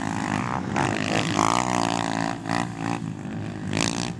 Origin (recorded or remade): recorded